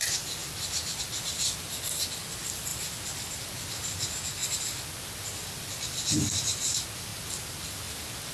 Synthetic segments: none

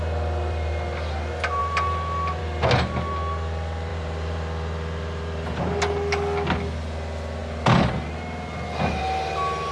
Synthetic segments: 3.9-5.6 (vocoder, BigVGAN v2)

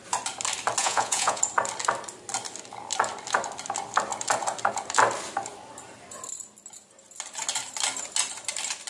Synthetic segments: 0.8-1.4 (vocoder, Vocos)

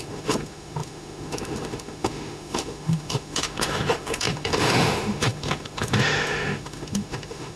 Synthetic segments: 0.0-7.6 (autoencoder, DAC-VAE)